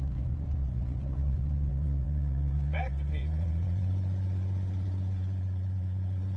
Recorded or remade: remade